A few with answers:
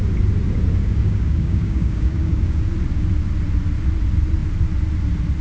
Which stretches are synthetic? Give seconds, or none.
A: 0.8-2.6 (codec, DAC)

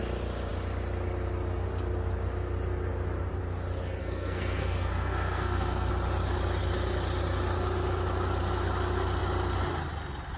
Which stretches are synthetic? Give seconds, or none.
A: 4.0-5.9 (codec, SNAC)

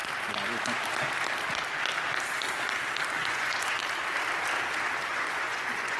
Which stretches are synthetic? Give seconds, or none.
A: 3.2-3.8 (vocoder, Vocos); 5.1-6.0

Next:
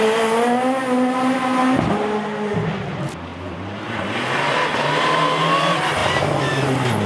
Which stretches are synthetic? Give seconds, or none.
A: none